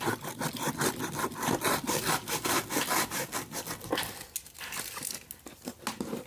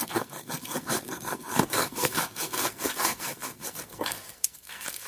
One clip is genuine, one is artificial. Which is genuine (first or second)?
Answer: first